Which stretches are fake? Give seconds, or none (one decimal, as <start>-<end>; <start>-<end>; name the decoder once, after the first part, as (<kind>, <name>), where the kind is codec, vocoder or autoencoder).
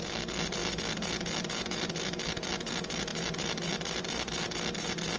none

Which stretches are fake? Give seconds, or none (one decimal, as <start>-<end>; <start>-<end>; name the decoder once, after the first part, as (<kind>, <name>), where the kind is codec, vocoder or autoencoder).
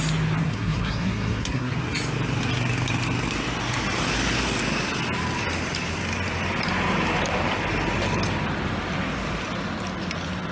0.4-1.7 (codec, SNAC)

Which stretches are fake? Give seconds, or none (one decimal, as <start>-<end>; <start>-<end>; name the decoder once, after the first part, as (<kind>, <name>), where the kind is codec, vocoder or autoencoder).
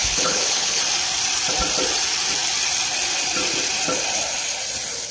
0.0-0.8 (codec, HILCodec)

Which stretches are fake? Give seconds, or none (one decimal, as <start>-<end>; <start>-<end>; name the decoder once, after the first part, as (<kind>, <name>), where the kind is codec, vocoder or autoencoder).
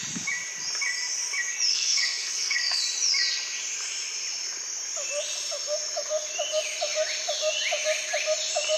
1.7-2.8 (codec, SNAC)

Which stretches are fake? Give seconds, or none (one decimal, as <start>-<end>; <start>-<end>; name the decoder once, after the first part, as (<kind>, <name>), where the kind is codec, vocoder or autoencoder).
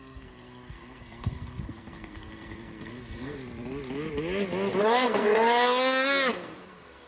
0.0-3.4 (codec, SNAC); 4.8-7.1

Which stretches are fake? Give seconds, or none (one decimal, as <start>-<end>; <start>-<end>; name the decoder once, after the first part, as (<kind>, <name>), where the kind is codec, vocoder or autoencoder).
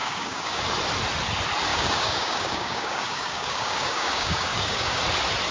0.0-0.6 (codec, DAC); 1.7-5.0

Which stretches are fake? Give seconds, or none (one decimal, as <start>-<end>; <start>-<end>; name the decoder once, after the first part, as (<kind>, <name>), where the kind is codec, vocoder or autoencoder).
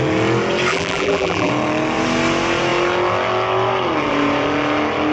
0.7-1.5 (vocoder, BigVGAN v2)